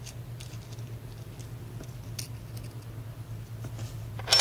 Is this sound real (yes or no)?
yes